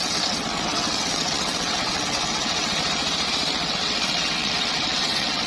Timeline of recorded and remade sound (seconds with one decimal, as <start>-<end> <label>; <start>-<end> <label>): 0.0-2.8 remade; 2.8-3.5 recorded; 3.5-5.5 remade